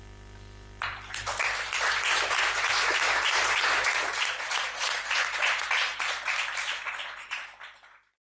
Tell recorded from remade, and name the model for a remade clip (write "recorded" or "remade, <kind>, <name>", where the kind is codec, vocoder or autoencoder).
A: remade, vocoder, BigVGAN v2